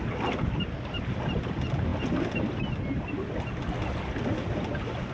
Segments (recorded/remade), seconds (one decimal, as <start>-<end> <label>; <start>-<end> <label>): 0.0-5.1 recorded